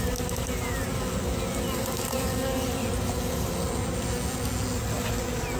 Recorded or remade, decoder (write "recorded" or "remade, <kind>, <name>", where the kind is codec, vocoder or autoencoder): recorded